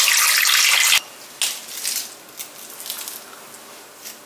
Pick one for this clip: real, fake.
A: real